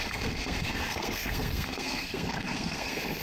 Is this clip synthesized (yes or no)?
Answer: yes